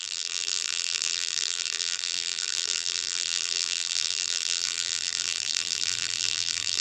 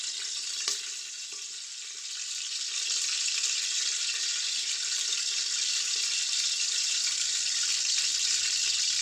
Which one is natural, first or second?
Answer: second